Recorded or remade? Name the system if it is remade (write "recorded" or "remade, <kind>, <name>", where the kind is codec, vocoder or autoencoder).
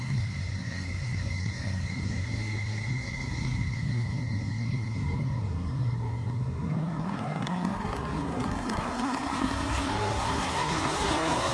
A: remade, codec, SNAC